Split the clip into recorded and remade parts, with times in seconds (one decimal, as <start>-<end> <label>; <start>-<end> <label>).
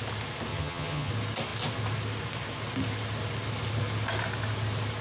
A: 0.0-0.5 recorded; 0.5-1.1 remade; 1.1-5.0 recorded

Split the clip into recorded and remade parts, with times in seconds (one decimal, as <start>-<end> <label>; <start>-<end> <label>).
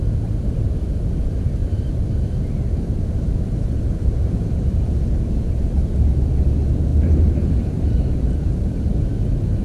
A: 0.0-1.6 recorded; 1.6-5.8 remade; 5.8-6.9 recorded; 6.9-8.5 remade; 8.5-9.6 recorded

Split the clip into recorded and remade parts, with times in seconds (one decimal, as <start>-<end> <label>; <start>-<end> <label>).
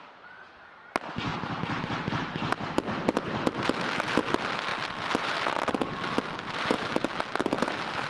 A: 0.0-8.1 recorded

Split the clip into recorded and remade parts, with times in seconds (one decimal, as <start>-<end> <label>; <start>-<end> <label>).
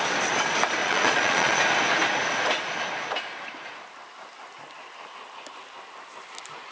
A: 0.0-0.8 recorded; 0.8-1.6 remade; 1.6-6.7 recorded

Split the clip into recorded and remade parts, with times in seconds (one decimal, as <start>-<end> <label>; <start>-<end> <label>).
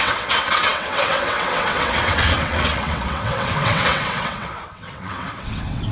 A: 0.0-5.9 remade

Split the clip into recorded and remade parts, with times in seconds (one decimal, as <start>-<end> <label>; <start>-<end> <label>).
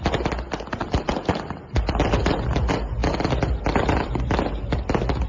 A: 0.0-0.8 recorded; 0.8-2.5 remade; 2.5-3.0 recorded; 3.0-4.1 remade; 4.1-5.3 recorded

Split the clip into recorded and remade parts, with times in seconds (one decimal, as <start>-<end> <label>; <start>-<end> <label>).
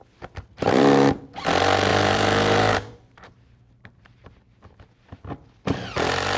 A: 0.0-0.5 recorded; 0.5-1.1 remade; 1.1-1.9 recorded; 1.9-4.4 remade; 4.4-6.4 recorded